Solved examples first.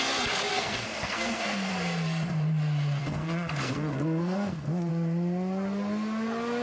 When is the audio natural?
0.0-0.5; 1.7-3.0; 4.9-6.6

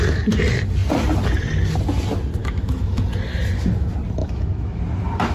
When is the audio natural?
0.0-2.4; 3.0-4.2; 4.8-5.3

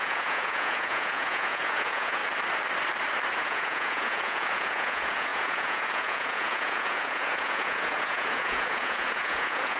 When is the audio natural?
2.2-3.4

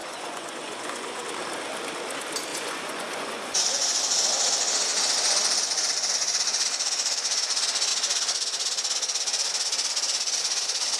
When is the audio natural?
1.2-2.5; 3.6-11.0